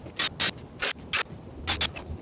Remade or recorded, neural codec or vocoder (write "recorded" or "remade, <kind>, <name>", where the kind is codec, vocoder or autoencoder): recorded